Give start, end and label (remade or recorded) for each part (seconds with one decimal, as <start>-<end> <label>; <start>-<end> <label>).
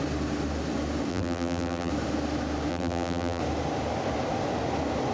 0.0-1.1 recorded; 1.1-1.9 remade; 1.9-2.7 recorded; 2.7-3.4 remade; 3.4-5.1 recorded